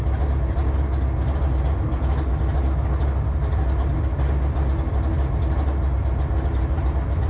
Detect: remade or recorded recorded